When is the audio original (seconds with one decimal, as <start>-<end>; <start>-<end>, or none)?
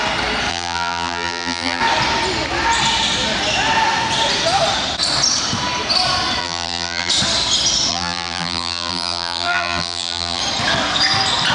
0.0-0.5; 1.8-6.4; 7.1-7.9; 10.4-11.5